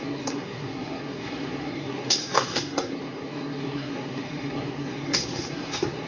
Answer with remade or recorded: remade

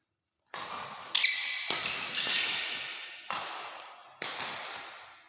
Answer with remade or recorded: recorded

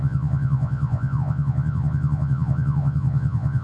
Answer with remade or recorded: remade